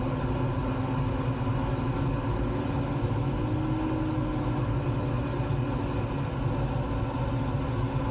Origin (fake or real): real